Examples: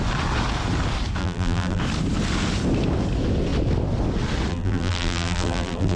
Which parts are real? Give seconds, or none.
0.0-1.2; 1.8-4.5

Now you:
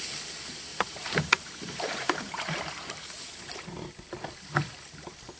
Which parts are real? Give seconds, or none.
0.0-0.7; 3.9-5.4

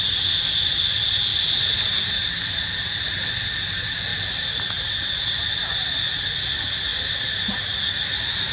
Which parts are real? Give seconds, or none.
0.0-1.3; 1.8-4.1; 4.9-6.9; 7.8-8.5

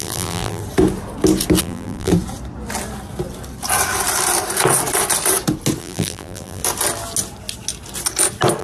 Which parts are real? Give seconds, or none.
0.6-1.6; 2.1-5.8; 6.6-8.6

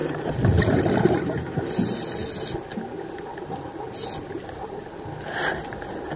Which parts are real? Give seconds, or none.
1.7-6.2

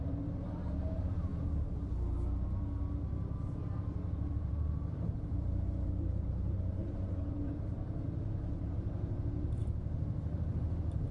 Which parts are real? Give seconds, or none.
1.3-4.3

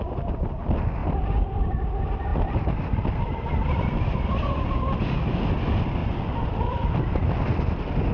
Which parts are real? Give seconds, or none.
0.0-1.0; 1.8-2.3; 3.4-8.1

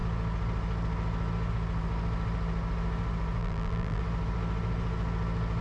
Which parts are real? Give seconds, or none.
0.0-3.4; 4.0-5.6